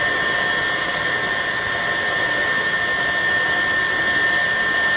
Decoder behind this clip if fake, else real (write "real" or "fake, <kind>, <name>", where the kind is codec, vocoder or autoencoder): real